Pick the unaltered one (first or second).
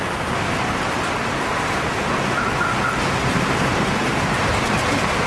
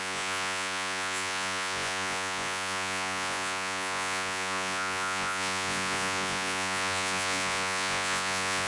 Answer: first